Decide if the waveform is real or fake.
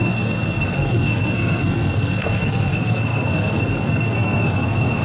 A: fake